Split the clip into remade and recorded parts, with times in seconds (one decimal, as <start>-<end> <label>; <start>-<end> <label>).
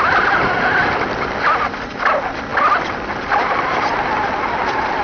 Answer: 0.0-5.0 recorded